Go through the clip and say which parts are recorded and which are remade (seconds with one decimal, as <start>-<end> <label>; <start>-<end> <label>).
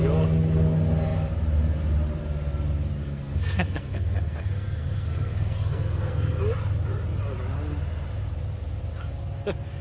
0.0-3.0 recorded; 3.0-6.4 remade; 6.4-9.8 recorded